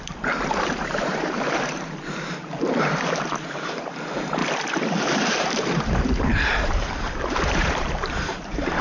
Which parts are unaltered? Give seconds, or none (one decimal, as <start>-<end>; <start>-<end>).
4.4-5.0